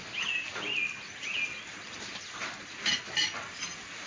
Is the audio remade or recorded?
recorded